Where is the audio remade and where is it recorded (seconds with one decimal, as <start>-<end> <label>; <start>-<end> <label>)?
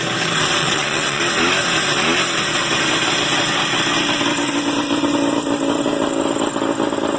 0.0-0.6 recorded; 0.6-1.2 remade; 1.2-7.2 recorded